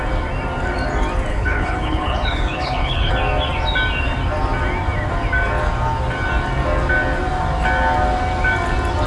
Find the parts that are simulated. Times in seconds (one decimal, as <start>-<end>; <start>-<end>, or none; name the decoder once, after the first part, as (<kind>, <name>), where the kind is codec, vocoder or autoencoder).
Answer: 1.3-3.1 (codec, HILCodec)